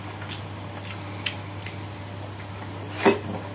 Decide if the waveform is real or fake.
real